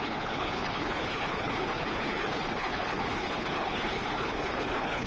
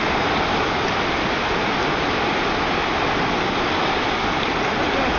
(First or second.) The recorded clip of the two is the second